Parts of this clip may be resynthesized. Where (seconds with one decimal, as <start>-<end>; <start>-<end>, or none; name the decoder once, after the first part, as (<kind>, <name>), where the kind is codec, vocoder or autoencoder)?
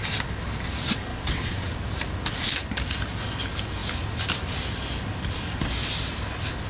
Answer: 1.1-1.7 (vocoder, WaveNeXt)